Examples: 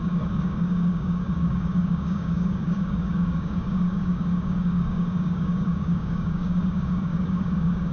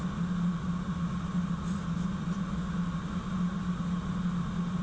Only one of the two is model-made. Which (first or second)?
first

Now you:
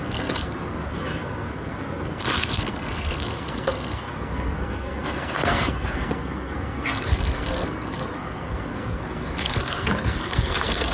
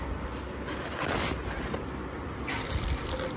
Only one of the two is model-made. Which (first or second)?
first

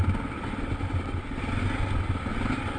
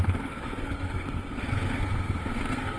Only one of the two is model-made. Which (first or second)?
second